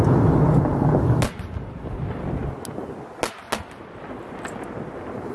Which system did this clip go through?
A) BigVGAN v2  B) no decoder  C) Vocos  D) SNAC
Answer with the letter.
B